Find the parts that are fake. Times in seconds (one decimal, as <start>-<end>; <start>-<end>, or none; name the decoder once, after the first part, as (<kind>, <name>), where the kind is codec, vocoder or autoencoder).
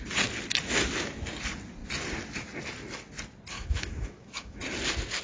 3.5-4.6 (autoencoder, DAC-VAE)